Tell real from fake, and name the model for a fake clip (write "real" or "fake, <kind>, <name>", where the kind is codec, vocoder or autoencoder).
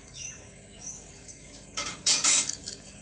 fake, codec, DAC